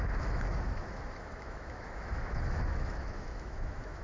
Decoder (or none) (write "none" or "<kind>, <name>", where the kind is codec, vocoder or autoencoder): autoencoder, DAC-VAE